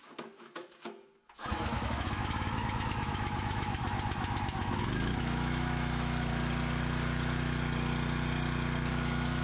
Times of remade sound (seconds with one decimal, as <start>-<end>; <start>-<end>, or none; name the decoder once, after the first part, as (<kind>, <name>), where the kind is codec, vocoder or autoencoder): 0.0-6.3 (autoencoder, DAC-VAE); 8.9-9.4